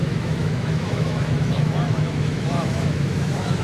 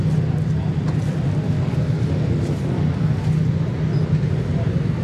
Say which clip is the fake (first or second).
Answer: first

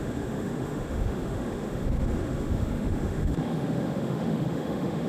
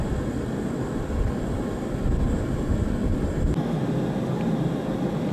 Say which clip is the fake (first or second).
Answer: first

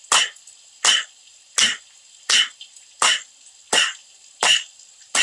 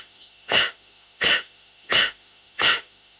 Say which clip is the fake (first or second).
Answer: second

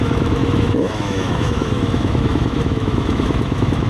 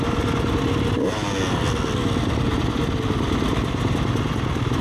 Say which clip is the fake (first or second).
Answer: first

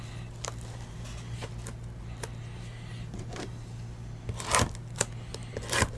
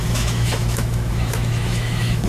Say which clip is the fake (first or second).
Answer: second